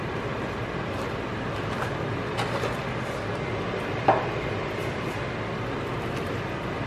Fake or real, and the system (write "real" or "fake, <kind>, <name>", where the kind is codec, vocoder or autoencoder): fake, vocoder, BigVGAN v2